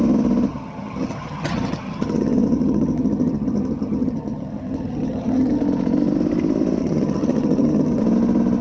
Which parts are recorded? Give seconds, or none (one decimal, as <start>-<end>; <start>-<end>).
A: 0.0-0.5; 5.6-6.8; 8.0-8.6